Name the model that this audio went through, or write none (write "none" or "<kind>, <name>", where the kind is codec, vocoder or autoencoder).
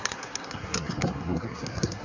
codec, SNAC